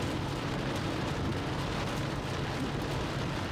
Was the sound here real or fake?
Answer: real